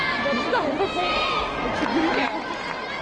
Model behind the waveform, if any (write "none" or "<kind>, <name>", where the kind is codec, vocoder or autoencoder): none